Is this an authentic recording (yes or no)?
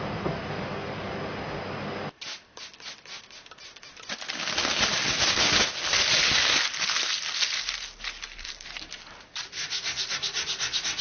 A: yes